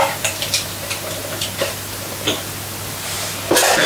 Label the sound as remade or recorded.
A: recorded